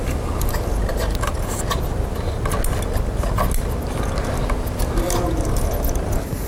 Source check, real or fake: real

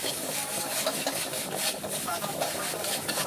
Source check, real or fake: fake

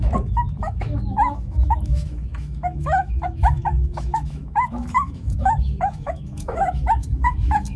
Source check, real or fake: fake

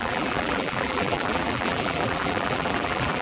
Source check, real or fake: fake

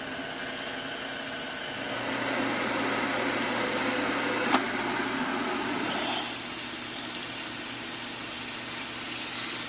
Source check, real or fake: real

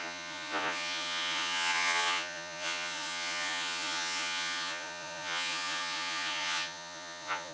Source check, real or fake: fake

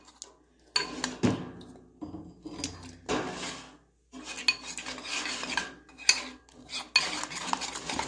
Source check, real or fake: real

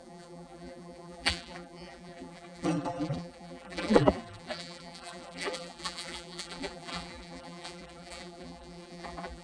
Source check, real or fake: fake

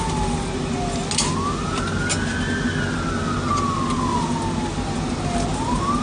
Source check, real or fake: real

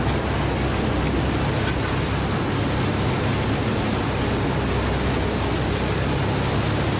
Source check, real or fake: real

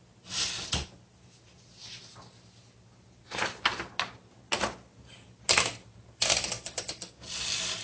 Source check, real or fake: real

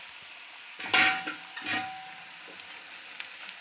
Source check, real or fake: real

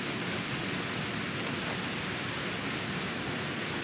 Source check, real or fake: real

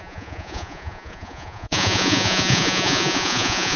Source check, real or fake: fake